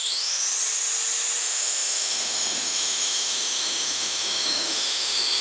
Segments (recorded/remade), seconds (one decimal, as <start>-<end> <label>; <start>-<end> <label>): 0.0-0.4 remade; 0.4-1.4 recorded; 1.4-5.4 remade